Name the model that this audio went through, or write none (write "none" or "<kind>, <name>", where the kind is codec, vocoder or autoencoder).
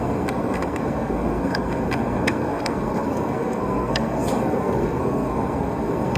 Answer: codec, SNAC